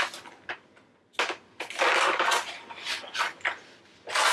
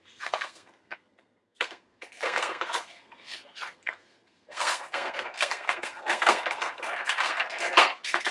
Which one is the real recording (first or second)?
first